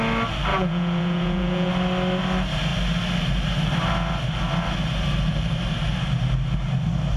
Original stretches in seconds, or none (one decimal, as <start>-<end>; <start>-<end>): 0.0-0.5; 1.7-7.2